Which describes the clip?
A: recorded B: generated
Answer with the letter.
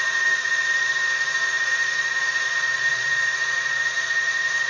B